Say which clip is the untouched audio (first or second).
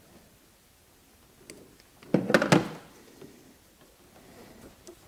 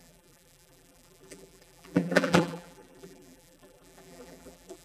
first